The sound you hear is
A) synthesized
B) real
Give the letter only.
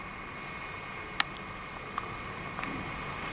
B